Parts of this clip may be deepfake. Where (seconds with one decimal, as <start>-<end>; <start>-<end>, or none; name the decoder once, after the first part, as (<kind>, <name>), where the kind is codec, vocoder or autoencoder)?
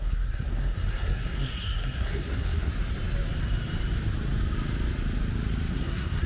0.0-2.7 (codec, SNAC); 5.7-6.3